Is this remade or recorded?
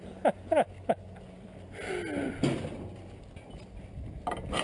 recorded